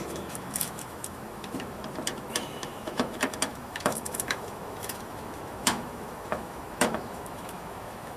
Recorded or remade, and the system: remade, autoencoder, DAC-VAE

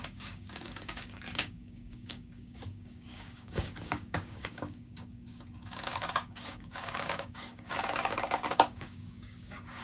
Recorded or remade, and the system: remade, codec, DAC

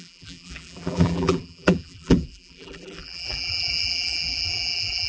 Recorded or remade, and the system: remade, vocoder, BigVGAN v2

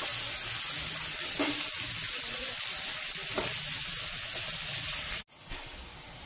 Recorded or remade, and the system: recorded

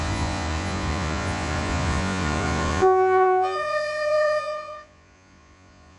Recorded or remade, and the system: remade, vocoder, Vocos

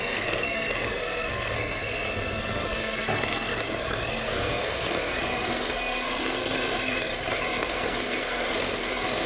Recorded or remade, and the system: remade, codec, SNAC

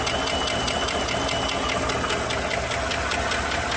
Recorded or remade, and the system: recorded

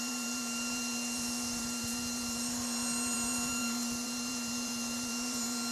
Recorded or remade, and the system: remade, vocoder, BigVGAN v2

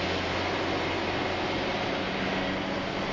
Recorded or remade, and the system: recorded